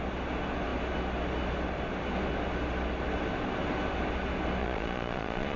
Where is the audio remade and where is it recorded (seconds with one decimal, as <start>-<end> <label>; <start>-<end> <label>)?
0.0-4.6 recorded; 4.6-5.6 remade